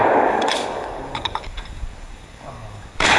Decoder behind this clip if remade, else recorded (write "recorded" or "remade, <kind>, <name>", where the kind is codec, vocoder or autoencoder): remade, codec, DAC